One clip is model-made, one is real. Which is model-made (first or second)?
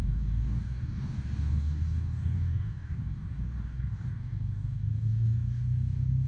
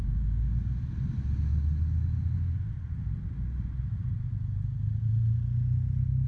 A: first